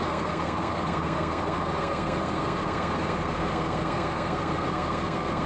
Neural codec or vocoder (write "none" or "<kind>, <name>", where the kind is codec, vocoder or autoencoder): codec, SNAC